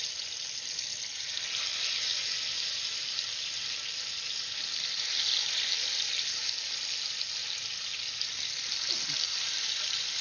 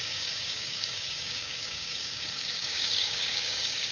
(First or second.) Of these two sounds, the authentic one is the first